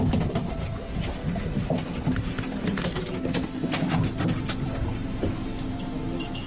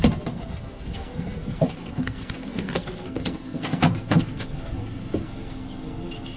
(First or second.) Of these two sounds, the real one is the first